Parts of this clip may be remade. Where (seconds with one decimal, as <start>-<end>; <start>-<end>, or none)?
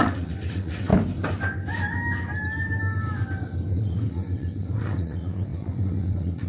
0.0-0.9; 3.7-6.5